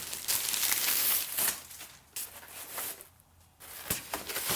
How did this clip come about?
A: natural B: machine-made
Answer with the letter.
A